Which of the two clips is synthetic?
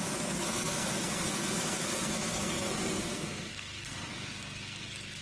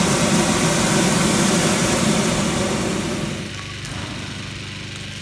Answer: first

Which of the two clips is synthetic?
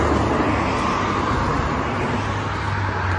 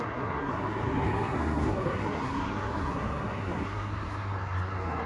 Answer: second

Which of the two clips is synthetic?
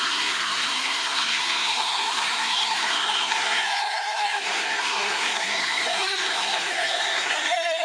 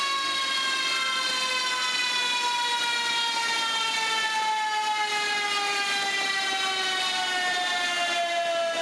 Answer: first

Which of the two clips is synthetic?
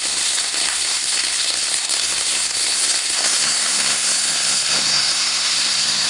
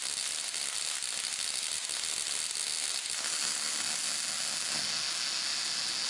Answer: first